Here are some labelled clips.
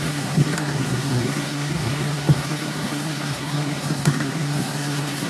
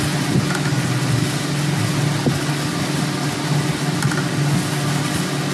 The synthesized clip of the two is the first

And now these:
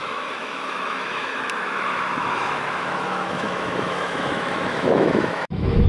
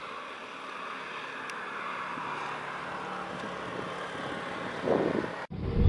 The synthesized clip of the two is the first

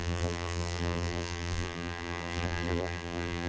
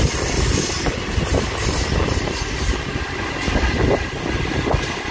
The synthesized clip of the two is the first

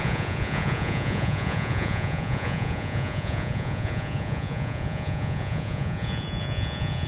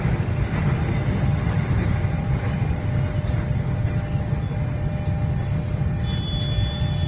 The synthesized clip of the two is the first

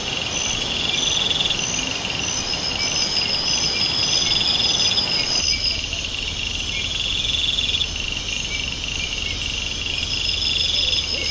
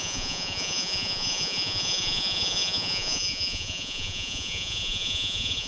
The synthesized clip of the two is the second